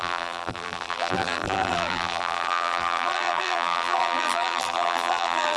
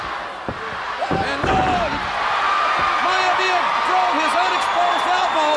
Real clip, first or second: second